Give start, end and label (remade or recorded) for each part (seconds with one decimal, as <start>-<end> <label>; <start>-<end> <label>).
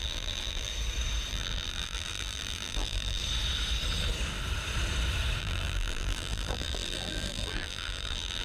0.0-0.7 remade; 0.7-1.3 recorded; 1.3-3.2 remade; 3.2-5.4 recorded; 5.4-8.4 remade